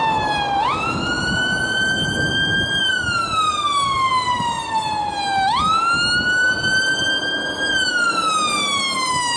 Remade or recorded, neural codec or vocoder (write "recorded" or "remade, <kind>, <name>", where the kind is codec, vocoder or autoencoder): recorded